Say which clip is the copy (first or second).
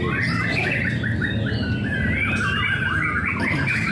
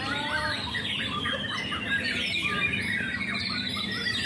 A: second